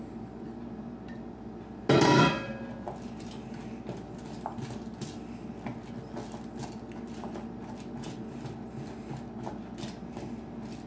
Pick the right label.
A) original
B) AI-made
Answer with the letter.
A